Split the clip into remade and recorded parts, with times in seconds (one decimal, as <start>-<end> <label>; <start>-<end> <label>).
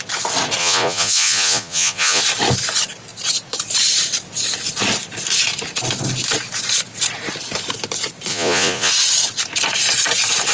0.0-0.6 recorded; 0.6-2.2 remade; 2.2-8.3 recorded; 8.3-8.9 remade; 8.9-10.5 recorded